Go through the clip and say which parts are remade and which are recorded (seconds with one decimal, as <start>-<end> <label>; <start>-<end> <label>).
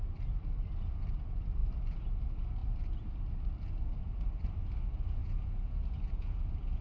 0.0-5.2 recorded; 5.2-6.8 remade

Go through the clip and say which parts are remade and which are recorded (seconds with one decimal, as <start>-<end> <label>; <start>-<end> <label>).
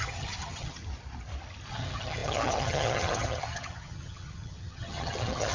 0.0-0.8 remade; 0.8-1.7 recorded; 1.7-5.5 remade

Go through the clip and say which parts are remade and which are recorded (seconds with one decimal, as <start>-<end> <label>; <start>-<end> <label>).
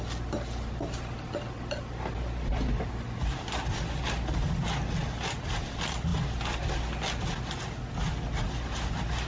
0.0-9.3 recorded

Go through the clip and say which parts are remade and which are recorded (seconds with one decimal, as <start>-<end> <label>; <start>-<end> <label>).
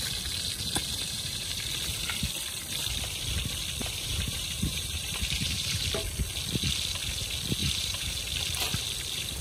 0.0-0.8 recorded; 0.8-1.5 remade; 1.5-3.8 recorded; 3.8-5.8 remade; 5.8-7.6 recorded; 7.6-8.2 remade; 8.2-9.4 recorded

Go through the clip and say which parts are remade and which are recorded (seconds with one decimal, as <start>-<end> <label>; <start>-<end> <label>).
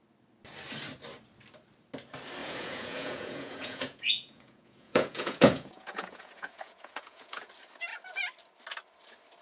0.0-2.4 recorded; 2.4-7.5 remade; 7.5-9.4 recorded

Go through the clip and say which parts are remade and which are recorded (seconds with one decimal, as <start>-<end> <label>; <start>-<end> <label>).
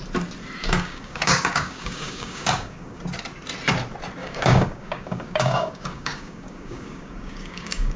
0.0-0.6 recorded; 0.6-3.0 remade; 3.0-4.2 recorded; 4.2-8.0 remade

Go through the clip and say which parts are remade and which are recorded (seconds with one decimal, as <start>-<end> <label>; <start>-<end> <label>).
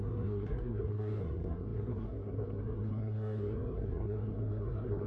0.0-5.1 remade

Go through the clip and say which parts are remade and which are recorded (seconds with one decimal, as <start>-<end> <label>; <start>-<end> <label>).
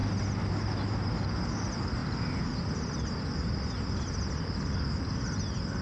0.0-5.8 recorded